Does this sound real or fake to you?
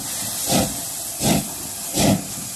real